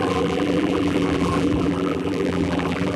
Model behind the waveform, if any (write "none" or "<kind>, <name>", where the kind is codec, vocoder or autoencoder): vocoder, BigVGAN v2